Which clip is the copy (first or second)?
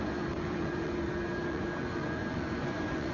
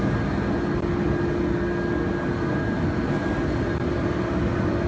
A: first